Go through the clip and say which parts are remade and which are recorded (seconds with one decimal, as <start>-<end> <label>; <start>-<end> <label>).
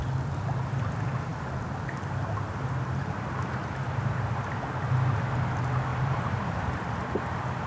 0.0-3.6 recorded; 3.6-4.5 remade; 4.5-5.9 recorded; 5.9-6.6 remade; 6.6-7.7 recorded